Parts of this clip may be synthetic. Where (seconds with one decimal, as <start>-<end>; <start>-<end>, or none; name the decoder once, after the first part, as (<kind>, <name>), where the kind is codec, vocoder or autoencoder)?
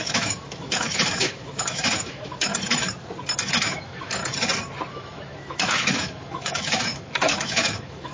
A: 0.0-2.5 (autoencoder, DAC-VAE); 3.5-4.2; 4.9-8.1